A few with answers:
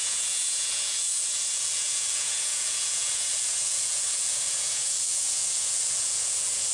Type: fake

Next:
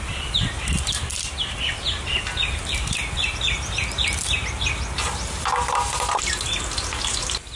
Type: real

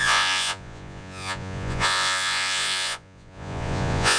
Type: fake